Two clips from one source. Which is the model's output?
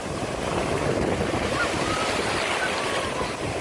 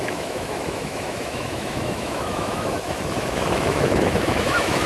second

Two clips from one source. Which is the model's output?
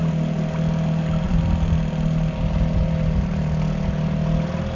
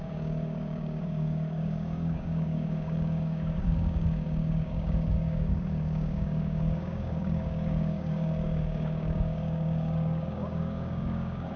second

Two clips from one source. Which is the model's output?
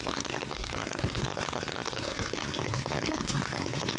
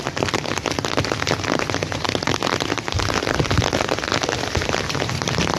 first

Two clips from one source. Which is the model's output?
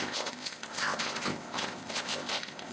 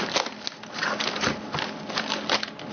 first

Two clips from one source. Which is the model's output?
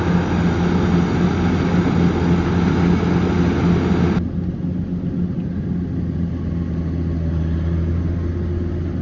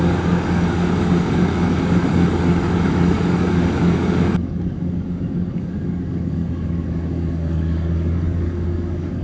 second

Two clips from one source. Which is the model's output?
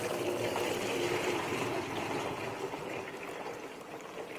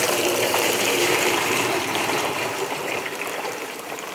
second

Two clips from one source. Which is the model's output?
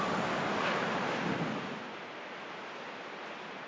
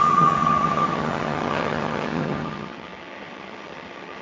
second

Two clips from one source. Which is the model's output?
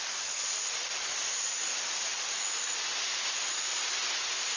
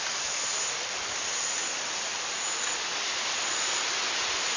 second